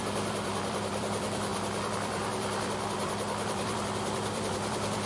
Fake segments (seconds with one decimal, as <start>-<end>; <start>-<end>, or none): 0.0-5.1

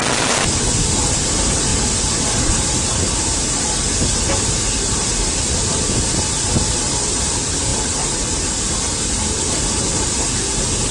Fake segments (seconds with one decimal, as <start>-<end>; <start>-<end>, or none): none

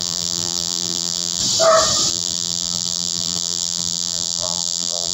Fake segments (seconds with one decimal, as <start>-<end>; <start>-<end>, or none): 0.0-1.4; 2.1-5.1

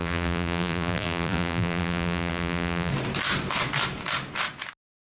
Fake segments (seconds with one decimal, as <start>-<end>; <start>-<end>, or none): 0.0-2.9

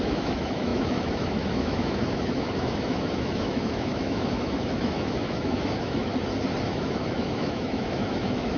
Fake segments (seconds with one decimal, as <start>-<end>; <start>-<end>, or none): 0.0-6.1; 6.7-8.6

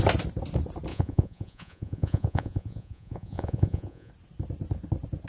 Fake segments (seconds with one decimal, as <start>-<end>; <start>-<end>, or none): 0.9-4.1

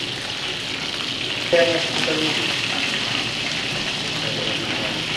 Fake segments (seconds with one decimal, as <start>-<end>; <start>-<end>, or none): 1.7-4.0